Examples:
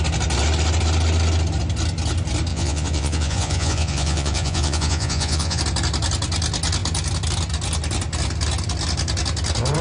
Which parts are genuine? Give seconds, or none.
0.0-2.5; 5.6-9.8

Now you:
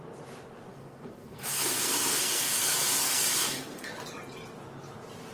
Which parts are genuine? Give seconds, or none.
0.0-0.7; 3.9-5.3

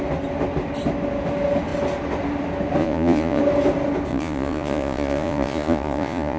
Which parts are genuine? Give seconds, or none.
0.0-2.8; 3.4-4.1

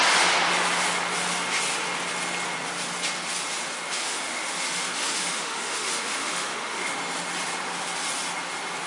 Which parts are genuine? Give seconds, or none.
0.0-4.0; 7.0-8.9

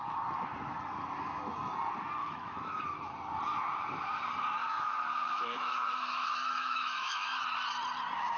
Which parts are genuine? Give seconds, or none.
0.0-2.2; 2.8-4.6; 7.4-8.4

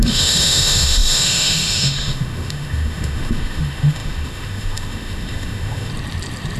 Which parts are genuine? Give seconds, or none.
5.9-6.6

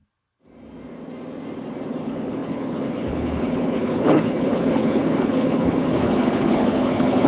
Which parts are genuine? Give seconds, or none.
0.0-2.0

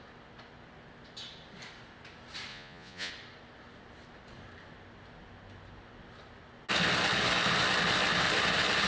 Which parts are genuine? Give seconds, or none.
0.0-2.5; 3.1-8.9